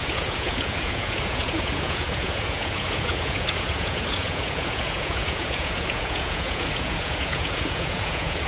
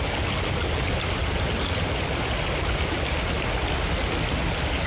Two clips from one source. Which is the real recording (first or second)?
second